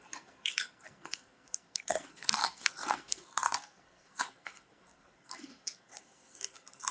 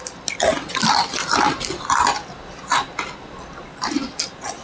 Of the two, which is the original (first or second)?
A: second